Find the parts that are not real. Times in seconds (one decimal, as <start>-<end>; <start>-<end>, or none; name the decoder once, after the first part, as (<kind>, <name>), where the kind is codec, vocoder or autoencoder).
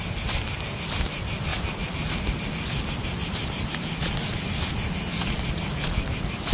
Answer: none